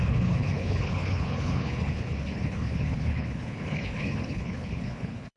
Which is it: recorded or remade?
remade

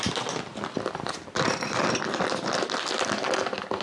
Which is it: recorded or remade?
recorded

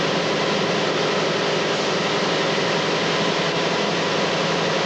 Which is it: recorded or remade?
recorded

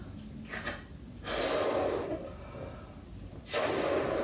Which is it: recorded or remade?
recorded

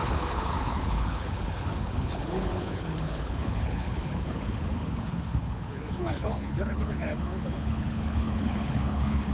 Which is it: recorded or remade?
remade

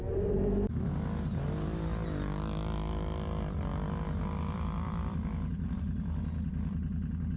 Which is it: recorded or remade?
recorded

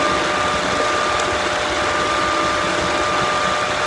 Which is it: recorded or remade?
recorded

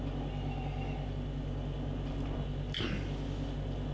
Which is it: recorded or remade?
recorded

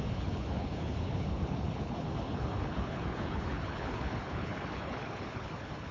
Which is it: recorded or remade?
remade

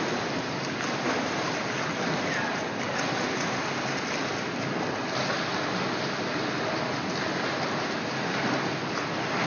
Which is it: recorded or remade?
recorded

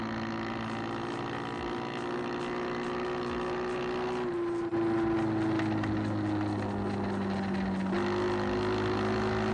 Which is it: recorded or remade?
recorded